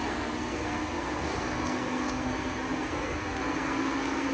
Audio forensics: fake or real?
fake